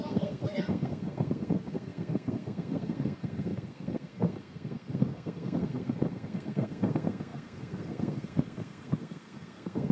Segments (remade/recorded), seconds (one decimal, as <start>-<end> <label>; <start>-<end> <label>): 0.0-9.9 remade